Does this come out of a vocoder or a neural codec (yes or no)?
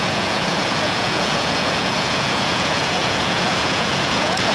yes